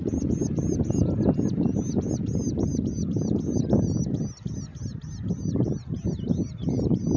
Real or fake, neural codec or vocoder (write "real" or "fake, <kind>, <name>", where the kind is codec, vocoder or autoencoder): real